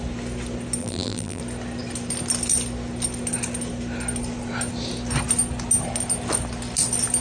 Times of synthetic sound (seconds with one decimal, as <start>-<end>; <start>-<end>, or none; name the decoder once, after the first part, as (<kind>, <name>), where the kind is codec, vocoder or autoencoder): 0.8-1.4 (vocoder, BigVGAN v2)